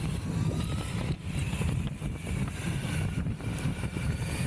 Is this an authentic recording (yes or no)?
yes